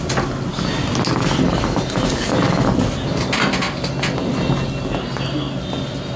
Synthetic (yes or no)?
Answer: no